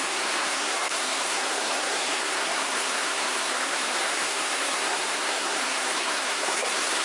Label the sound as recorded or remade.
remade